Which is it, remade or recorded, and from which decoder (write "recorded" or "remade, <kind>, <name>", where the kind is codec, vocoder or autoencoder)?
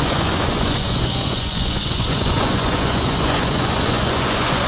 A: remade, vocoder, Vocos